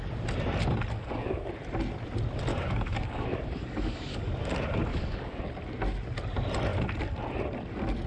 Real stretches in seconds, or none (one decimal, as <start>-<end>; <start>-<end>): 0.0-1.0; 1.5-2.5; 4.3-4.9; 5.4-8.1